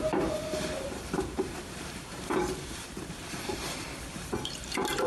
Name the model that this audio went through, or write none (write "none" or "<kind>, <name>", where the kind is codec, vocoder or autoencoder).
vocoder, BigVGAN v2